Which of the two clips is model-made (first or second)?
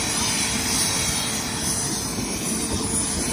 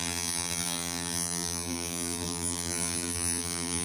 second